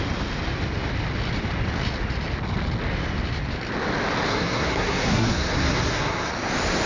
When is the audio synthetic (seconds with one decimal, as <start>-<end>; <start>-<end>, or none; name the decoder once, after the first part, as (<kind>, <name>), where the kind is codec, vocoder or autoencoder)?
4.3-6.3 (codec, SNAC)